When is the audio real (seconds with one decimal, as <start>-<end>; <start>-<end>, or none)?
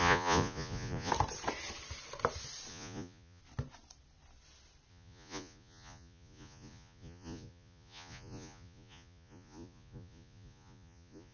1.1-2.7; 3.4-4.9